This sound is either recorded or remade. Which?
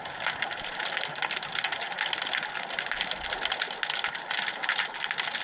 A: recorded